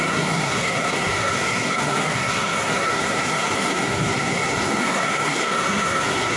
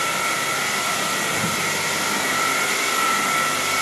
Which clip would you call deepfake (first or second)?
first